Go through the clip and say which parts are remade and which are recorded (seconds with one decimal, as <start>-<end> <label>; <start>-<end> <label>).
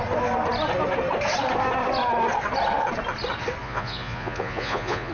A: 0.0-3.6 recorded; 3.6-5.1 remade